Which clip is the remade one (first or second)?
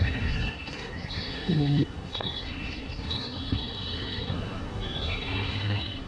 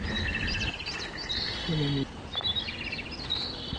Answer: first